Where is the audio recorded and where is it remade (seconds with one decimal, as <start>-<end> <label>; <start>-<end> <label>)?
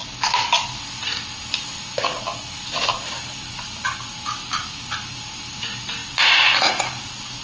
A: 0.0-4.4 recorded; 4.4-5.4 remade; 5.4-7.4 recorded